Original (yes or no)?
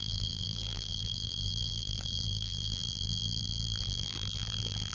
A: no